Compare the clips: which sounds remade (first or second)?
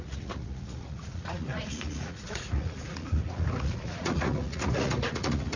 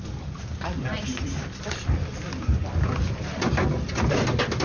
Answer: first